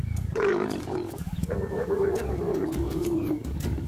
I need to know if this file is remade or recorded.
remade